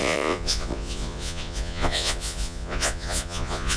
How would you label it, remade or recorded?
remade